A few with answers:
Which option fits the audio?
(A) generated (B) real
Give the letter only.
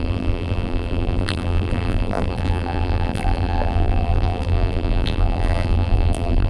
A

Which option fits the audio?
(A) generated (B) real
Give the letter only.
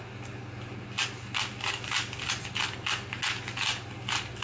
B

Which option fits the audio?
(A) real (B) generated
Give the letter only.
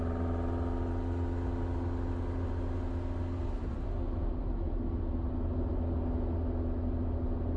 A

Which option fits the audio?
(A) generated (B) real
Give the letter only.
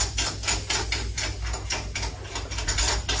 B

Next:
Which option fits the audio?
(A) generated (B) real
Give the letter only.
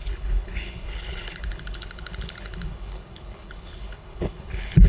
A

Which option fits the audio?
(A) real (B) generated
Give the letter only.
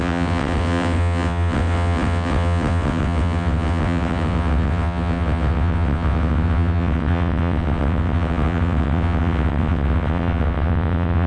B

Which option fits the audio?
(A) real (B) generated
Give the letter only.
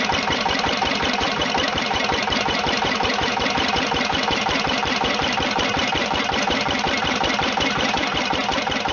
B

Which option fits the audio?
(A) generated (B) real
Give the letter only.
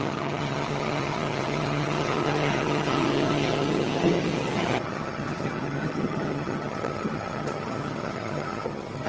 A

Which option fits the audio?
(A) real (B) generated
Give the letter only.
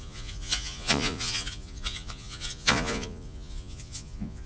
B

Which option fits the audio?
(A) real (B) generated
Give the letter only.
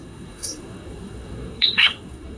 B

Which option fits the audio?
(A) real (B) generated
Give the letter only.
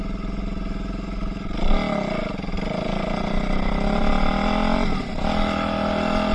A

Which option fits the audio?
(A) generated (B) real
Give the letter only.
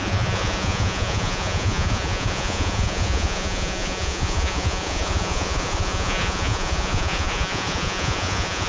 A